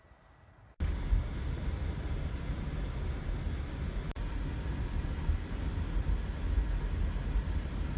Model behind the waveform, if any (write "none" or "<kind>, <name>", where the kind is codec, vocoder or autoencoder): none